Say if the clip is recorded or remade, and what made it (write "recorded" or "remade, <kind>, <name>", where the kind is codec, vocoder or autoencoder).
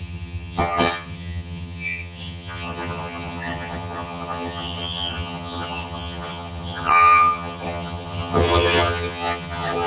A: remade, vocoder, HiFi-GAN